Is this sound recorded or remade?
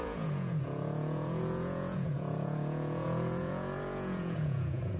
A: remade